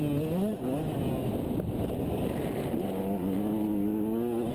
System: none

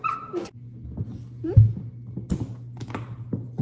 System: none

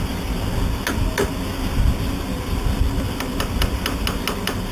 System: none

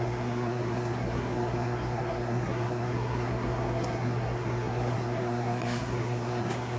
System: codec, SNAC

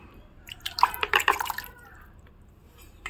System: vocoder, BigVGAN v2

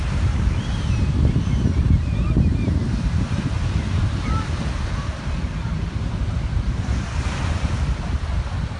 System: vocoder, BigVGAN v2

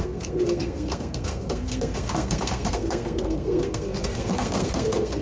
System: codec, SNAC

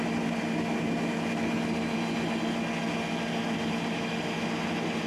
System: none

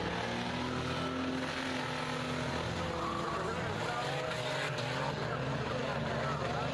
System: none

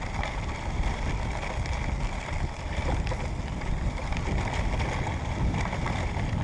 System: none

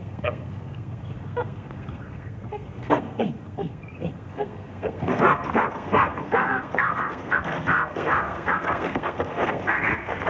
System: codec, SNAC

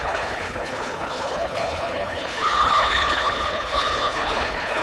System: codec, HILCodec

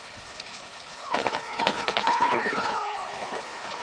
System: codec, HILCodec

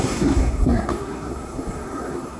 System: codec, SNAC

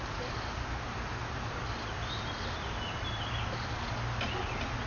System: none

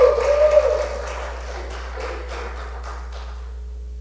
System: none